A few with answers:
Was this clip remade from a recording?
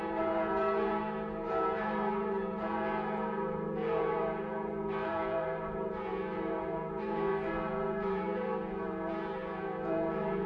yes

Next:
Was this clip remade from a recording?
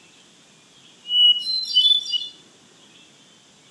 no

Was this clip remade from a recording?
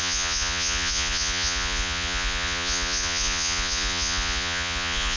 yes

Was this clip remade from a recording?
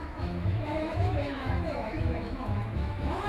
yes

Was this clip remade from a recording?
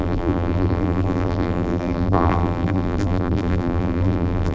yes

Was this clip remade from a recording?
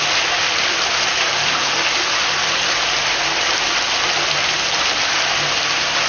no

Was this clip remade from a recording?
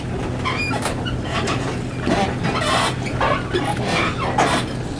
no